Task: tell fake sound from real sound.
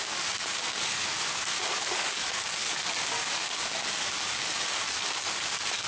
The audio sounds fake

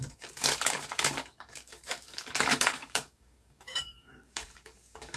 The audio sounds fake